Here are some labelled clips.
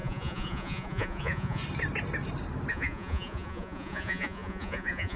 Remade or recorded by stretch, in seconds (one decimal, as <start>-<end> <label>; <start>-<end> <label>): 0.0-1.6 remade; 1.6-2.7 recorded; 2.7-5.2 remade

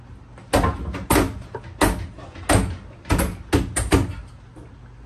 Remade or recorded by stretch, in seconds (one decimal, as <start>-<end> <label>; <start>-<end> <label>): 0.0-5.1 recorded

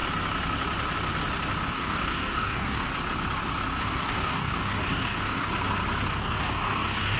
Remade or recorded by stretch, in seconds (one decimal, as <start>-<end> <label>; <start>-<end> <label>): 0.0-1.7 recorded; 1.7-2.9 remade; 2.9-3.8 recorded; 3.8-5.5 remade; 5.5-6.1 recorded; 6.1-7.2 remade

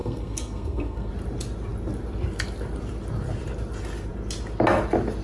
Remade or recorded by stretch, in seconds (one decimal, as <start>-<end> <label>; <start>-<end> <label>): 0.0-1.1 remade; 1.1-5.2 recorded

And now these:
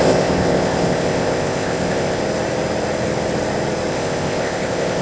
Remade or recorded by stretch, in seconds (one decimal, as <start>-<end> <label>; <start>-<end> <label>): 0.0-2.2 remade; 2.2-3.9 recorded; 3.9-5.0 remade

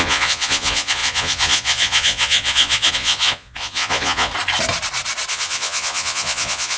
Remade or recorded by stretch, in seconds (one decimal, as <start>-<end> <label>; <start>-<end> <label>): 0.0-4.3 remade; 4.3-5.3 recorded; 5.3-6.8 remade